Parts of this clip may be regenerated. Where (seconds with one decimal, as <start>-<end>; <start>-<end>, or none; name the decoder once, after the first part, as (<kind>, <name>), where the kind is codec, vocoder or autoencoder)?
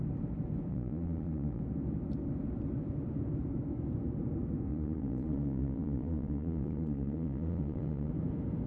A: 0.7-1.6 (vocoder, Vocos); 4.7-8.1